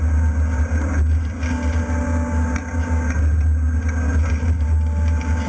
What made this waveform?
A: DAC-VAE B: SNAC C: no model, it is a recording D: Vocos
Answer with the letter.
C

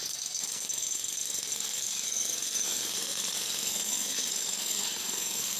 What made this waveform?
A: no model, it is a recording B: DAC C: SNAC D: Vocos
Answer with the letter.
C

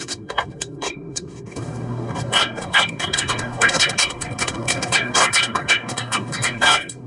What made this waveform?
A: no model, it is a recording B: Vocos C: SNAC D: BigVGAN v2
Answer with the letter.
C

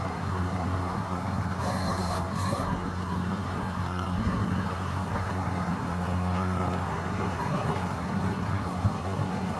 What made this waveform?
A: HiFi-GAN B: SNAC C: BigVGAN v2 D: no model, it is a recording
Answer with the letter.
B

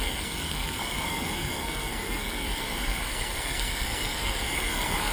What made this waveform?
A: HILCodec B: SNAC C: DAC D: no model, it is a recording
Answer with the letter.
B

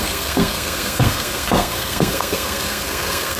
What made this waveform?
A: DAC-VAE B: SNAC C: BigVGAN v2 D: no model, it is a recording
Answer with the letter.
B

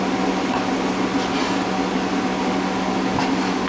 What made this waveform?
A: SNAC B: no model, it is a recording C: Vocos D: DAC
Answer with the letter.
B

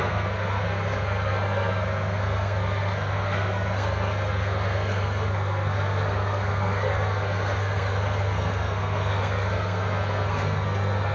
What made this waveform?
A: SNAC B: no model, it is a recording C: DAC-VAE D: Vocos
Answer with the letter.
A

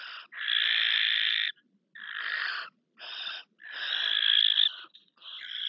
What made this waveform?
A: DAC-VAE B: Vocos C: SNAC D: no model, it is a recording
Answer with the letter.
D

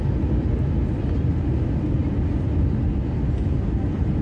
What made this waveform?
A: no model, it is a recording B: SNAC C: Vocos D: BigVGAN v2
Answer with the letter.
A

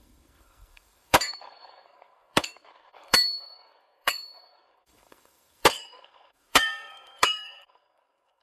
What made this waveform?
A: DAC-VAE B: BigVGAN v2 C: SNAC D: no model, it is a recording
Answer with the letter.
C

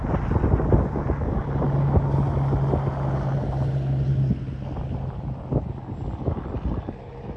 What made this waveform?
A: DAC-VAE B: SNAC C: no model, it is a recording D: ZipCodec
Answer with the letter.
C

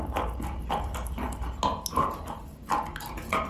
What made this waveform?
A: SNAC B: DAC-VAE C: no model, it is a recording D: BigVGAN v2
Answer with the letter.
C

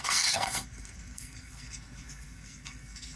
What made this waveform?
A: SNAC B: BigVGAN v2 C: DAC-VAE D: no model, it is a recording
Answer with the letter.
A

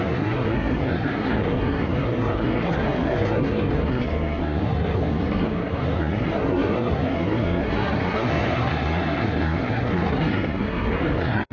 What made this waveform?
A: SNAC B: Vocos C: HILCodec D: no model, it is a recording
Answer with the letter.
A